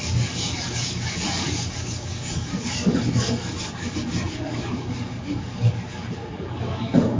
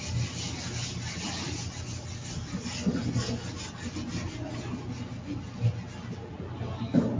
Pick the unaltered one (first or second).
second